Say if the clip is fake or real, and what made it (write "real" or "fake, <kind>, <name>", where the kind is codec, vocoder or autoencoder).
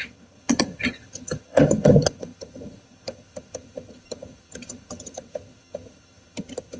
fake, vocoder, HiFi-GAN